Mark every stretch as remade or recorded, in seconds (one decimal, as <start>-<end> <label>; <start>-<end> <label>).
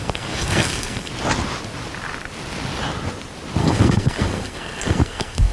0.0-1.1 remade; 1.1-3.6 recorded; 3.6-5.5 remade